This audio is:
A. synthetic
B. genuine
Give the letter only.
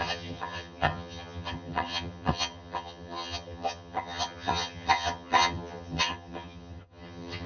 A